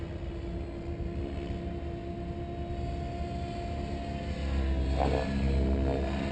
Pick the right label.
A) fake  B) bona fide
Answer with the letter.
B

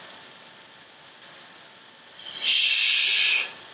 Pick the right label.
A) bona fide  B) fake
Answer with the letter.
A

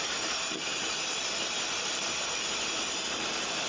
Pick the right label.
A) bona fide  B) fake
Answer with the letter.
A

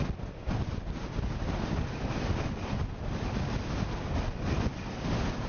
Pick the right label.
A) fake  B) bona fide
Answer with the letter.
B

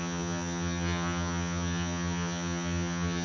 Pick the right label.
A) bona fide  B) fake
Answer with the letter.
B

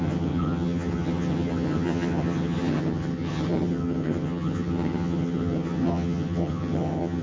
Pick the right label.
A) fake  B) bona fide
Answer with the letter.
A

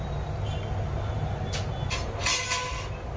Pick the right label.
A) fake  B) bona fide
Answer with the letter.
B